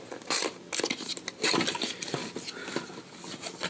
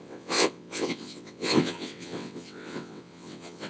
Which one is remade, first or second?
second